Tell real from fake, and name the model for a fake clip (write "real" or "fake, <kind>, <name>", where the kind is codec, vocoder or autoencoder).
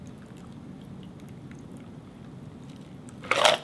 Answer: real